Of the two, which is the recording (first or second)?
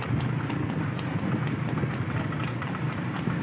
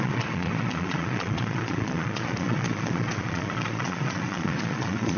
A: first